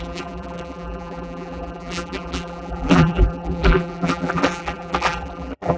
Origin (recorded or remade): remade